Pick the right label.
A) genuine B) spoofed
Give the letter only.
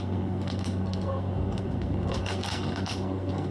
B